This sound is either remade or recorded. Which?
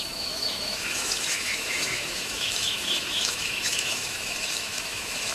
remade